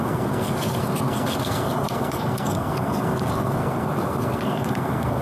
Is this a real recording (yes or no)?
no